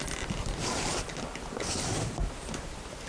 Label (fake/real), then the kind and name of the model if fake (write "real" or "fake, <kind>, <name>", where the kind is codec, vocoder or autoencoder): real